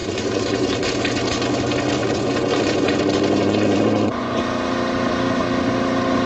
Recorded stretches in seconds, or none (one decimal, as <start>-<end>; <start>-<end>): 0.9-2.0; 3.0-3.4; 4.4-6.3